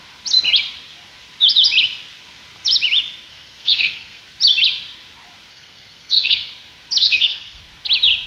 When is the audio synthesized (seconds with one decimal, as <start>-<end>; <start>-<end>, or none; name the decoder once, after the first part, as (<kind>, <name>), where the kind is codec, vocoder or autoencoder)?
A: 3.3-4.2 (codec, SNAC); 5.5-6.5; 7.0-7.6